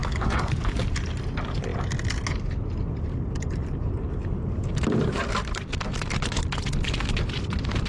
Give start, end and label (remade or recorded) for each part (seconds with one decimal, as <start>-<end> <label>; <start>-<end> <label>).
0.0-0.8 remade; 0.8-7.9 recorded